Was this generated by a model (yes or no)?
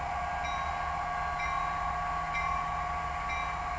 no